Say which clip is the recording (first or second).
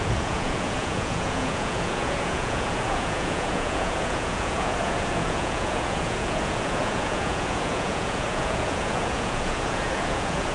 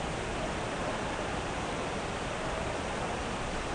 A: second